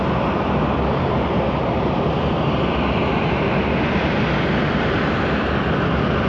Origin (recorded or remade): recorded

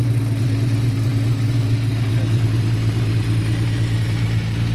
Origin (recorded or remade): recorded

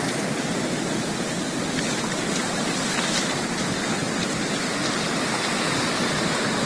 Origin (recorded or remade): recorded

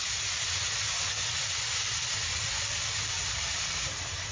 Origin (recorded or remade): recorded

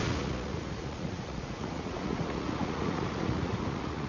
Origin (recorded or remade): remade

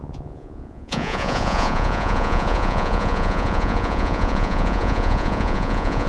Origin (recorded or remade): remade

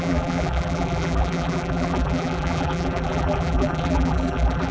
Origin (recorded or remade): remade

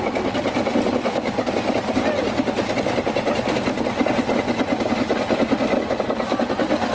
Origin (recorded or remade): recorded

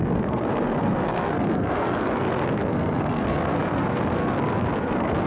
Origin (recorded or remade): remade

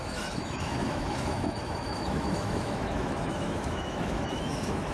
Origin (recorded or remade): remade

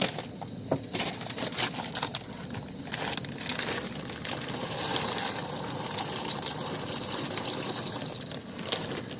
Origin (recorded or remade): recorded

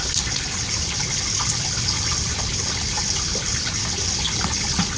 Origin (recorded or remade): recorded